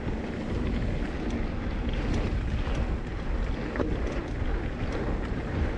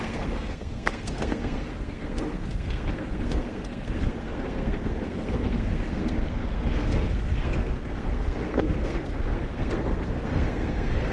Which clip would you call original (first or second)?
first